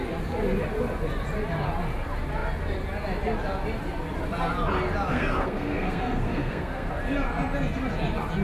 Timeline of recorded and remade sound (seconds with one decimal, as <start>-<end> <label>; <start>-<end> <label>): 0.0-5.1 recorded; 5.1-6.9 remade; 6.9-8.4 recorded